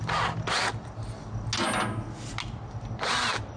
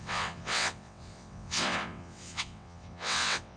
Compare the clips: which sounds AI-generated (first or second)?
second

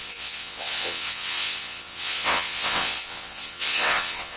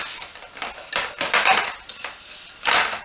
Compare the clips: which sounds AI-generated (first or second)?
first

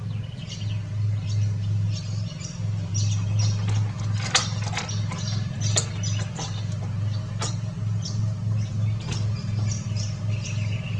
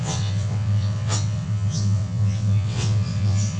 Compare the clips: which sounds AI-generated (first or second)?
second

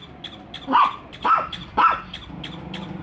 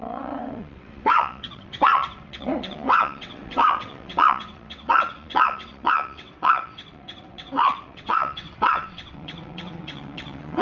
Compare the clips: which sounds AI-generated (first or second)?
second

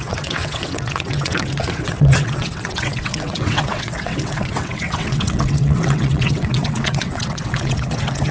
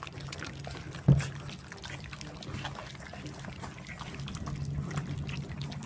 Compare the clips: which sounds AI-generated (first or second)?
first